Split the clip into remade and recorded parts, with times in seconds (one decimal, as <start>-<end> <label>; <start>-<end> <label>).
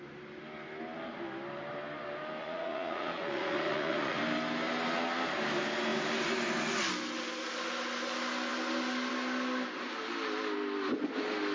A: 0.0-2.4 recorded; 2.4-4.2 remade; 4.2-11.5 recorded